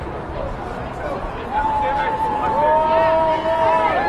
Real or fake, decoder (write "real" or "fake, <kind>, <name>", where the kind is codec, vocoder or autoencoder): real